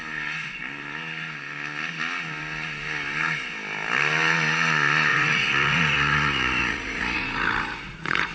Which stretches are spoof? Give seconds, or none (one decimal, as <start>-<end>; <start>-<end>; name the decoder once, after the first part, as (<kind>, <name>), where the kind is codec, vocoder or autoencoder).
5.1-8.3 (vocoder, Vocos)